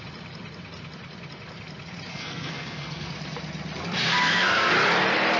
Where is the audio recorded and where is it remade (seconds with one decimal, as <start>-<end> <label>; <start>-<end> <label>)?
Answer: 0.0-2.1 recorded; 2.1-3.1 remade; 3.1-4.1 recorded; 4.1-4.7 remade; 4.7-5.4 recorded